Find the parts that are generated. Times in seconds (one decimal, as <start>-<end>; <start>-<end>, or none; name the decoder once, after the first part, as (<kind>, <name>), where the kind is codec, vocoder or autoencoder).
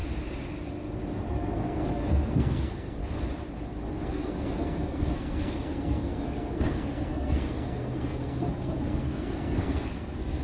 1.3-3.0 (codec, SNAC); 3.9-10.4